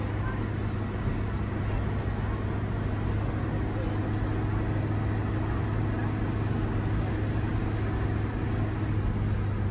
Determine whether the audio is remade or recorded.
recorded